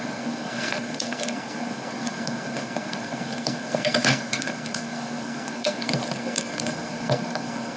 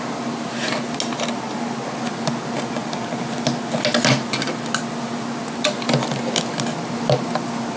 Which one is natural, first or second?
second